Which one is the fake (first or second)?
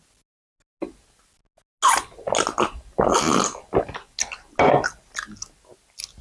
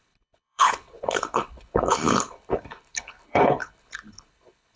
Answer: second